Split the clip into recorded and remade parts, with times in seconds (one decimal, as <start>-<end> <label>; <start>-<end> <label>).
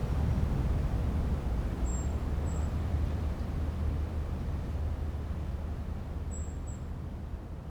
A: 0.0-7.7 recorded